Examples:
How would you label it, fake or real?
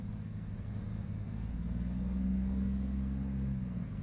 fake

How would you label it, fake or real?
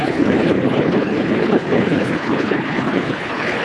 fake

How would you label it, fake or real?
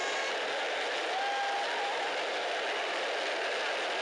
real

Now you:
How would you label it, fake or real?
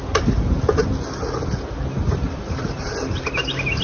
real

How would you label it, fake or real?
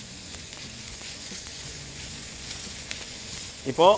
fake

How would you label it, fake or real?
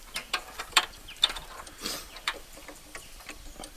fake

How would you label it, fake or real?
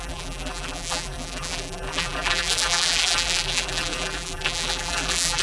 fake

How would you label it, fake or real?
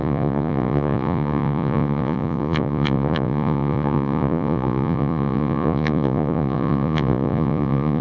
fake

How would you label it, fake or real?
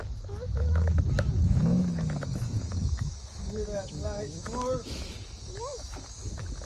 fake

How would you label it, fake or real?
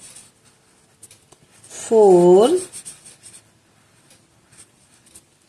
real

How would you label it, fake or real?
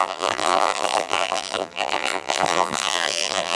fake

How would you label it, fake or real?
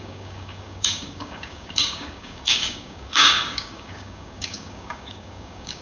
fake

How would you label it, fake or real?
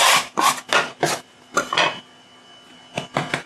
real